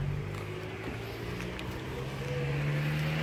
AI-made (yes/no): no